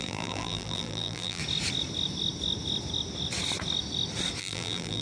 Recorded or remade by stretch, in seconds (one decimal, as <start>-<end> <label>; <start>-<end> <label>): 0.0-1.4 remade; 1.4-4.4 recorded; 4.4-5.0 remade